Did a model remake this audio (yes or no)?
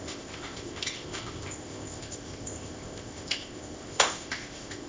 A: yes